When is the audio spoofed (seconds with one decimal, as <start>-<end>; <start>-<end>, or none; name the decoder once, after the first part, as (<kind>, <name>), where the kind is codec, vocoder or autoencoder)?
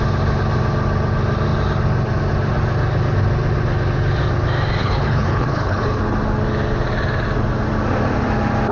4.8-6.0 (codec, HILCodec)